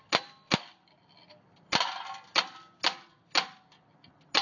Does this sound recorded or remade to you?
recorded